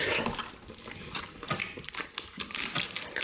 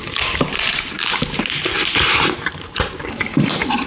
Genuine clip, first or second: first